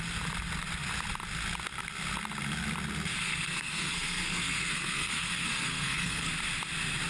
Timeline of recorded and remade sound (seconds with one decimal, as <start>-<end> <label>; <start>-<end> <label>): 0.0-3.2 recorded; 3.2-6.3 remade; 6.3-7.1 recorded